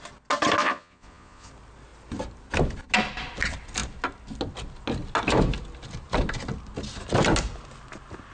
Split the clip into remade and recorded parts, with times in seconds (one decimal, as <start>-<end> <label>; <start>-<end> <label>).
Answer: 0.0-0.6 recorded; 0.6-1.5 remade; 1.5-8.3 recorded